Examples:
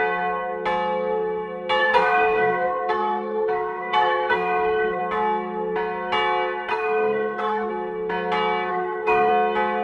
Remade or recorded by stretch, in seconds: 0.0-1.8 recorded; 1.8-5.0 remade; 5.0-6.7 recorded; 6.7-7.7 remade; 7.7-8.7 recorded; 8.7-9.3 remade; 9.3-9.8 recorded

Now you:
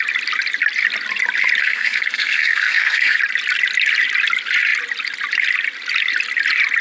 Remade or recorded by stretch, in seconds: 0.0-1.6 recorded; 1.6-3.2 remade; 3.2-6.8 recorded

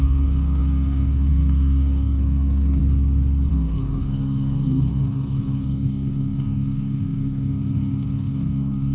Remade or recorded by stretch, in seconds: 0.0-2.8 remade; 2.8-3.5 recorded; 3.5-8.9 remade

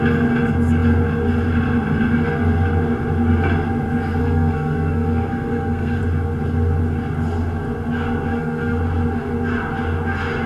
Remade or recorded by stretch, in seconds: 0.0-4.2 recorded; 4.2-6.0 remade; 6.0-8.3 recorded; 8.3-8.8 remade; 8.8-10.5 recorded

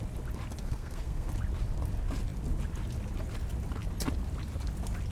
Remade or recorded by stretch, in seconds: 0.0-0.6 recorded; 0.6-1.3 remade; 1.3-5.1 recorded

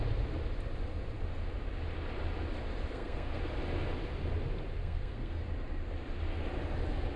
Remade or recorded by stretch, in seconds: 0.0-2.9 recorded; 2.9-3.4 remade; 3.4-4.8 recorded; 4.8-5.4 remade; 5.4-7.2 recorded

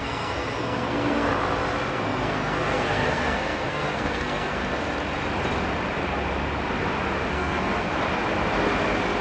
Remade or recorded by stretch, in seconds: 0.0-1.3 remade; 1.3-1.9 recorded; 1.9-4.6 remade; 4.6-7.3 recorded; 7.3-7.9 remade; 7.9-9.2 recorded

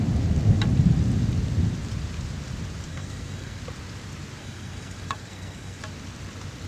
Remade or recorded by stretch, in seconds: 0.0-2.9 recorded; 2.9-3.6 remade; 3.6-4.4 recorded; 4.4-5.8 remade; 5.8-6.7 recorded